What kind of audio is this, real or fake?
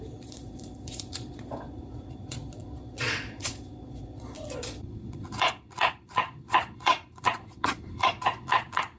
fake